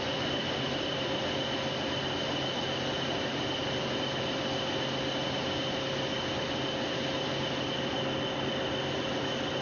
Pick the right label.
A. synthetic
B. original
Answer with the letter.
B